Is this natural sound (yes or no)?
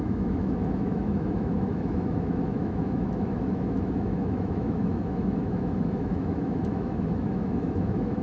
no